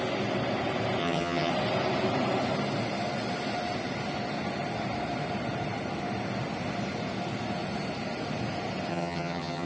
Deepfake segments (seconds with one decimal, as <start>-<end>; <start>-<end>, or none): 1.0-1.5; 8.9-9.7